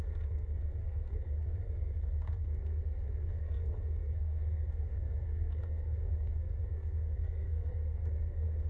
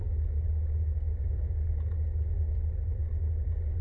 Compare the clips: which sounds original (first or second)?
second